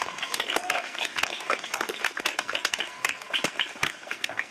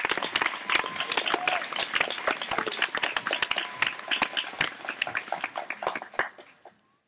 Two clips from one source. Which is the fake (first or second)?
first